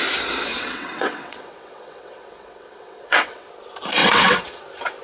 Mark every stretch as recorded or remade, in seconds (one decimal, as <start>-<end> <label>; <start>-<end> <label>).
0.0-0.5 recorded; 0.5-3.5 remade; 3.5-4.0 recorded; 4.0-4.6 remade; 4.6-5.0 recorded

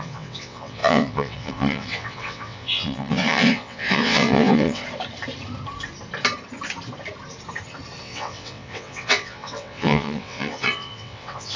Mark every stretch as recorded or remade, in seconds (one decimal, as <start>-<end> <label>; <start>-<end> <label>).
0.0-4.8 remade; 4.8-8.0 recorded; 8.0-11.6 remade

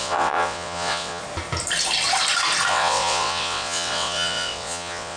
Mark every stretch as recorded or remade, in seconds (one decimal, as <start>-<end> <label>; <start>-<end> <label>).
0.0-1.2 remade; 1.2-2.7 recorded; 2.7-5.2 remade

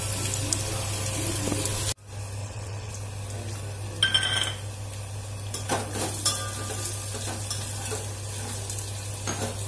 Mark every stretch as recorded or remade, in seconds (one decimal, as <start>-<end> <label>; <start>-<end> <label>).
0.0-2.4 recorded; 2.4-2.9 remade; 2.9-9.7 recorded

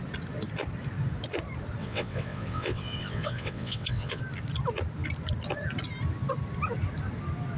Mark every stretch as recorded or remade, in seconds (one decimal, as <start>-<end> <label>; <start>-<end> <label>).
0.0-1.8 recorded; 1.8-4.2 remade; 4.2-7.6 recorded

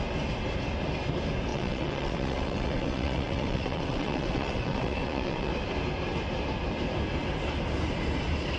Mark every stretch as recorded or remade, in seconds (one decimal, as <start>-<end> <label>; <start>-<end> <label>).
0.0-1.5 recorded; 1.5-5.5 remade; 5.5-8.6 recorded

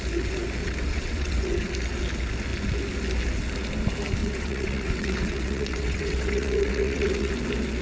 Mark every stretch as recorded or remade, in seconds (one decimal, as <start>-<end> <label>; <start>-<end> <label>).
0.0-0.6 recorded; 0.6-1.7 remade; 1.7-4.2 recorded; 4.2-7.3 remade; 7.3-7.8 recorded

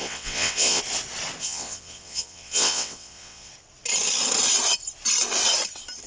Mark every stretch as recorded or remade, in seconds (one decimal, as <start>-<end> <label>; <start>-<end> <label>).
0.0-0.8 remade; 0.8-1.4 recorded; 1.4-3.5 remade; 3.5-6.1 recorded